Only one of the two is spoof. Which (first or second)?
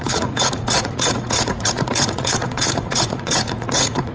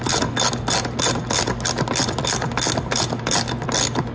first